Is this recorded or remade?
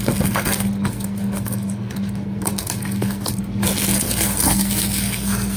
remade